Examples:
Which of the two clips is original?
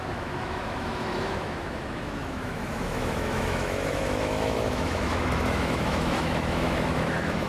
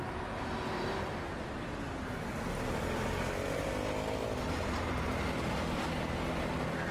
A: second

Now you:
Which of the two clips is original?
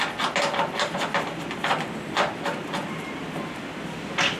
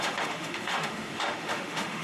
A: first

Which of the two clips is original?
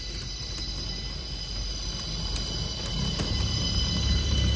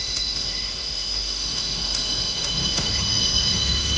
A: first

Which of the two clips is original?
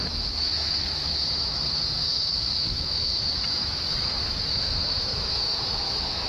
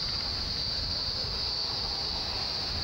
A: second